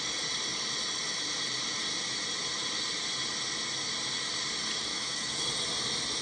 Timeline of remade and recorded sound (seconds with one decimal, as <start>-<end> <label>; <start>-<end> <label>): 0.0-4.9 recorded; 4.9-5.5 remade; 5.5-6.2 recorded